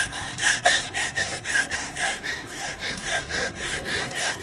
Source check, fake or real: fake